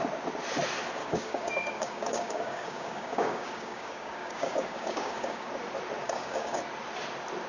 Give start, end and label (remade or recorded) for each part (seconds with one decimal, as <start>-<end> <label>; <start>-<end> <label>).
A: 0.0-1.0 recorded; 1.0-5.5 remade; 5.5-6.0 recorded; 6.0-6.6 remade; 6.6-7.5 recorded